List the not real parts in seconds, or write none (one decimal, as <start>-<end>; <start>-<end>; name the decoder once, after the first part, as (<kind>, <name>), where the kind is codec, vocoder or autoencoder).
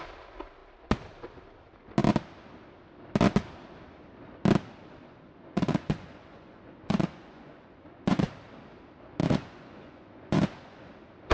5.0-8.3 (vocoder, Vocos); 9.2-10.9